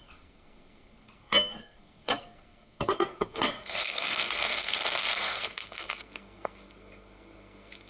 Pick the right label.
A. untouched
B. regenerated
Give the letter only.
B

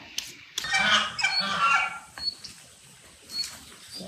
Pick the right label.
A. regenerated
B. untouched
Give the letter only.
B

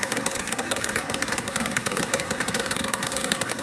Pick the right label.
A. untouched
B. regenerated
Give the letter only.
B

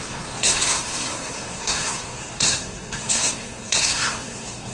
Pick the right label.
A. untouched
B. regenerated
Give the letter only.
B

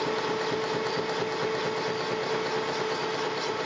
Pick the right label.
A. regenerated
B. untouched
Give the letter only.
B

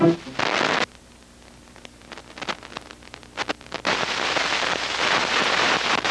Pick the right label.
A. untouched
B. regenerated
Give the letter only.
A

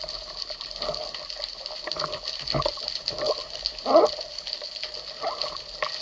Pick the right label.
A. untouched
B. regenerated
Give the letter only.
A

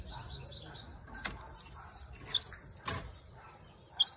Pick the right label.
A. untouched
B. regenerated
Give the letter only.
A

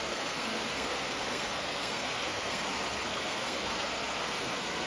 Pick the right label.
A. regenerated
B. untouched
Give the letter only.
A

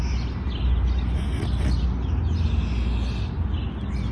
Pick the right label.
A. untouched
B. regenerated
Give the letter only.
A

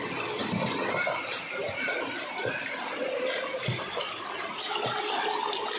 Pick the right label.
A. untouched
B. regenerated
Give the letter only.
A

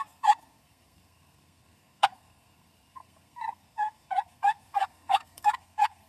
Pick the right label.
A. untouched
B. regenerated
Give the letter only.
B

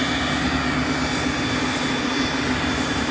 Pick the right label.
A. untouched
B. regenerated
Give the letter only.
A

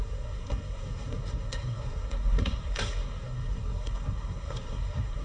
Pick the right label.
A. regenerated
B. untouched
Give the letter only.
A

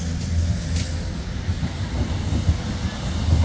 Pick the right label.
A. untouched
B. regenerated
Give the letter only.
A